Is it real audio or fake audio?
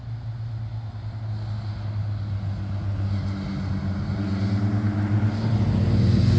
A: real